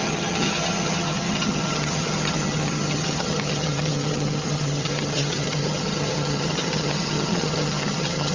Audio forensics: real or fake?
fake